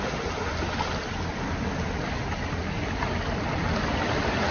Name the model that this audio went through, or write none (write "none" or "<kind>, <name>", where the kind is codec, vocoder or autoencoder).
none